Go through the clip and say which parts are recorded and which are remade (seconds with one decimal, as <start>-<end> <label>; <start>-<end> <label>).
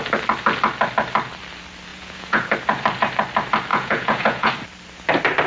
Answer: 0.0-1.9 recorded; 1.9-2.5 remade; 2.5-3.7 recorded; 3.7-4.5 remade; 4.5-5.5 recorded